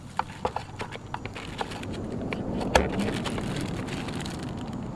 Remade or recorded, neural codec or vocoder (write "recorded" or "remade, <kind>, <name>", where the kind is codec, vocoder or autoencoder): recorded